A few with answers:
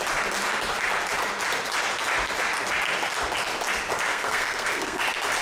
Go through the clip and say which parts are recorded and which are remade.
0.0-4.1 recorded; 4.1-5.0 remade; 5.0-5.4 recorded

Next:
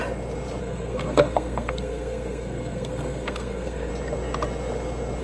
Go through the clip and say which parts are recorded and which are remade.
0.0-0.6 recorded; 0.6-3.9 remade; 3.9-5.2 recorded

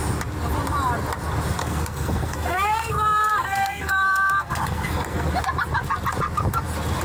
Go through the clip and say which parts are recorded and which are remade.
0.0-1.6 recorded; 1.6-5.3 remade; 5.3-7.0 recorded

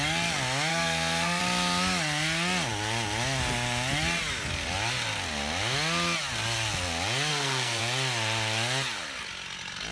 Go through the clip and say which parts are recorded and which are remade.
0.0-0.7 recorded; 0.7-1.4 remade; 1.4-7.3 recorded; 7.3-7.8 remade; 7.8-9.9 recorded

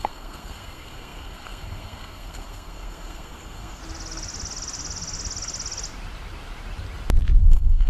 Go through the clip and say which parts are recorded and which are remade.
0.0-3.8 remade; 3.8-7.4 recorded; 7.4-7.9 remade

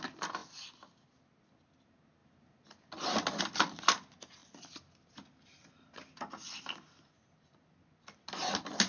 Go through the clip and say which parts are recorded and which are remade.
0.0-8.9 recorded